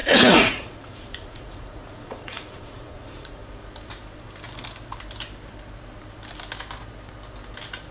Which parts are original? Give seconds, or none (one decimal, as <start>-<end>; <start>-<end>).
3.4-7.9

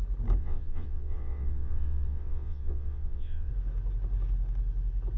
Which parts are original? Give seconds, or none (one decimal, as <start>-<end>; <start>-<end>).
0.0-0.4; 3.5-5.2